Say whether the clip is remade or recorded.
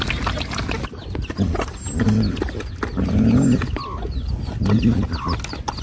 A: recorded